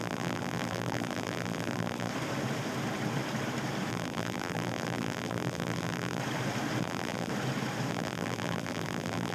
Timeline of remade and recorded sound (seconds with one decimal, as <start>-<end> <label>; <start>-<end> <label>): 0.0-2.1 remade; 2.1-3.9 recorded; 3.9-6.2 remade; 6.2-6.8 recorded; 6.8-7.3 remade; 7.3-7.9 recorded; 7.9-9.3 remade